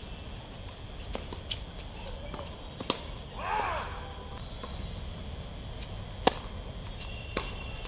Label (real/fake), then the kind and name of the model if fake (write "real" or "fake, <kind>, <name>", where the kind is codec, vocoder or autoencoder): real